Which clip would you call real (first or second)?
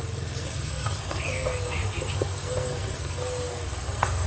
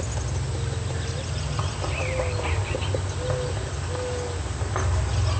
second